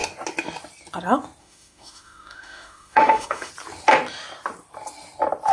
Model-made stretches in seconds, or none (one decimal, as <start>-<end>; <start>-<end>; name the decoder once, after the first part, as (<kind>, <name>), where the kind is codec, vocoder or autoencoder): 1.4-3.5 (autoencoder, DAC-VAE)